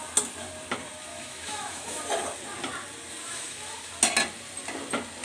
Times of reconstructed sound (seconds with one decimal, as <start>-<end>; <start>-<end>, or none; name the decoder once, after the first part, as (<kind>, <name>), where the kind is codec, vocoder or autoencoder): 1.1-2.0 (autoencoder, DAC-VAE); 3.2-3.9